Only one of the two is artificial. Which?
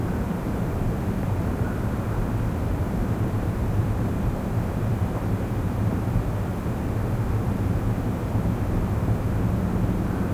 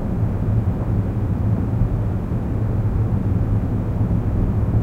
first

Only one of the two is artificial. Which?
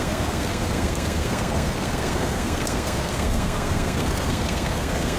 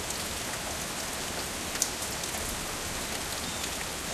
first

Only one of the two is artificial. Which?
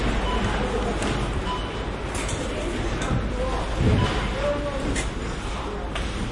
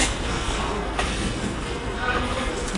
second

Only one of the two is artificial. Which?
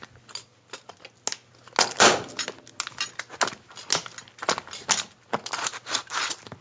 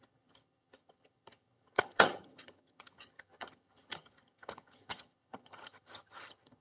second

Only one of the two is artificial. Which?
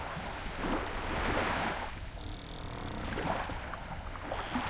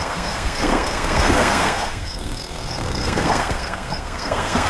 second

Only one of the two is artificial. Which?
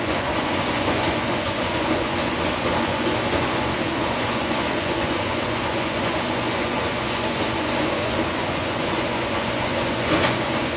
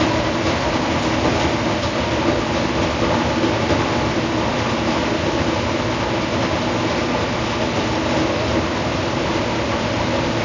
first